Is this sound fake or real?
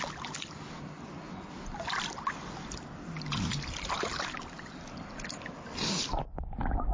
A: real